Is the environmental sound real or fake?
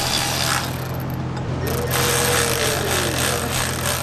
real